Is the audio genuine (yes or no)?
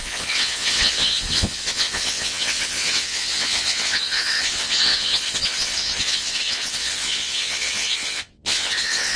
no